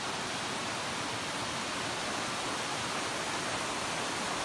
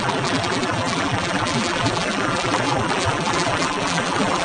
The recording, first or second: first